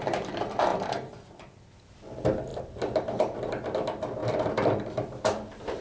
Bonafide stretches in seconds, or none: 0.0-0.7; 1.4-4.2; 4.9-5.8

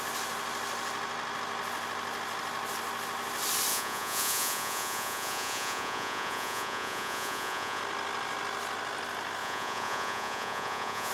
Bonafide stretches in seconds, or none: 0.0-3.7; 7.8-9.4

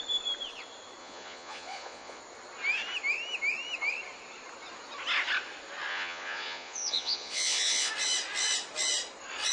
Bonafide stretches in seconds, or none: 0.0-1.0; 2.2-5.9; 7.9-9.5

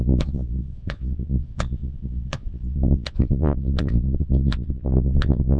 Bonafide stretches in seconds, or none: none